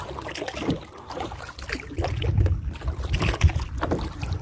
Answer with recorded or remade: recorded